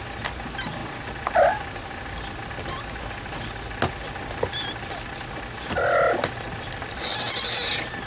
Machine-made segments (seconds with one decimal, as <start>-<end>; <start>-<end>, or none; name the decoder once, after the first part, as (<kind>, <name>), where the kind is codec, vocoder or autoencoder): none

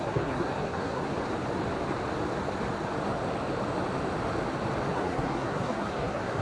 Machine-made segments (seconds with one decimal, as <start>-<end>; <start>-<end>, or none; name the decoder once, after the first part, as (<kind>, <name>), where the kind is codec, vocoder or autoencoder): 0.0-1.1 (codec, SNAC); 4.9-6.4

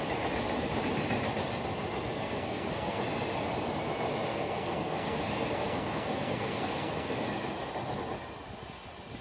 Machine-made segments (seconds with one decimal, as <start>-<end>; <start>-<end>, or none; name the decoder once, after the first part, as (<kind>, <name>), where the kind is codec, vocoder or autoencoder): 2.2-3.0 (codec, SNAC); 4.3-7.1